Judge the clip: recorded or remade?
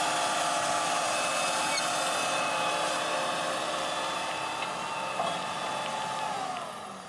recorded